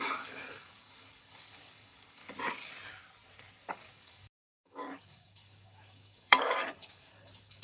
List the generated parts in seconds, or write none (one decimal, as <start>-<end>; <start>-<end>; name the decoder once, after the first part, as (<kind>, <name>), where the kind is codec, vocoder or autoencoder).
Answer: 0.0-2.2 (codec, DAC); 3.7-7.6